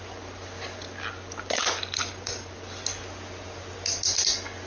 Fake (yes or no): no